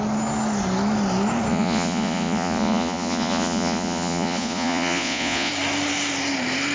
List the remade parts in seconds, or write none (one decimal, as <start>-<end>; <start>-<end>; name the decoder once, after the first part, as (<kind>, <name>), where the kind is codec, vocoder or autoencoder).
1.5-5.5 (vocoder, Vocos)